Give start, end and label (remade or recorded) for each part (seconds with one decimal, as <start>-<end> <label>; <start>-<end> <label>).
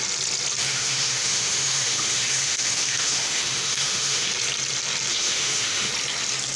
0.0-0.6 recorded; 0.6-4.3 remade; 4.3-5.1 recorded; 5.1-5.9 remade; 5.9-6.6 recorded